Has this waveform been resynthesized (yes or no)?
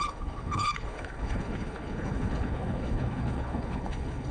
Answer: yes